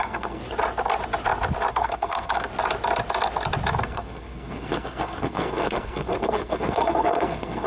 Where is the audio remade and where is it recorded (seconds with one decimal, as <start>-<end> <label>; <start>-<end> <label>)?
0.0-0.4 remade; 0.4-1.7 recorded; 1.7-2.5 remade; 2.5-3.8 recorded; 3.8-7.7 remade